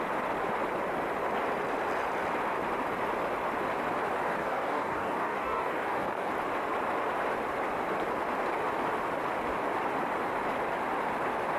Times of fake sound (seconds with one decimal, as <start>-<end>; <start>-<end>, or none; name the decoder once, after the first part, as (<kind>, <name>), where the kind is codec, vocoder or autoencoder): 4.4-6.3 (codec, DAC)